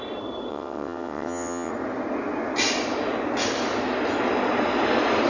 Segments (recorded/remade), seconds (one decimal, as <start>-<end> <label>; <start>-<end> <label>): 0.0-0.5 recorded; 0.5-1.7 remade; 1.7-5.3 recorded